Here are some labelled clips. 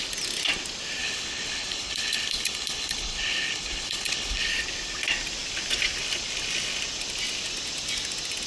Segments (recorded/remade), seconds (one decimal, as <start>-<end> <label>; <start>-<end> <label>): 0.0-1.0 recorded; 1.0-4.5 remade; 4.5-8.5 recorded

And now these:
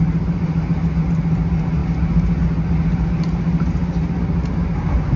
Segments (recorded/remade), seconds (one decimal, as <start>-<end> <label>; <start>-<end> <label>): 0.0-5.2 recorded

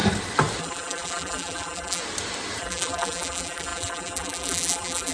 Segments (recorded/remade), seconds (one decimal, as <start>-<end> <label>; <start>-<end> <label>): 0.0-0.6 recorded; 0.6-2.0 remade; 2.0-2.6 recorded; 2.6-5.1 remade

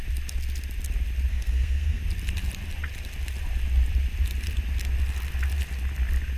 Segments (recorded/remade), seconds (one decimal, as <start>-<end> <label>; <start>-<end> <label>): 0.0-1.3 recorded; 1.3-2.0 remade; 2.0-6.4 recorded

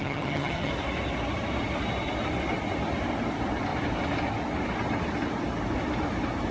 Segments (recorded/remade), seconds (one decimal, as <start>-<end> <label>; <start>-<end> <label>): 0.0-0.7 remade; 0.7-6.5 recorded

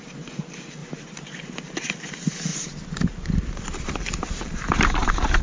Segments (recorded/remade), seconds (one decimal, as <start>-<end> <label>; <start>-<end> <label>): 0.0-0.8 recorded; 0.8-2.1 remade; 2.1-2.5 recorded; 2.5-5.4 remade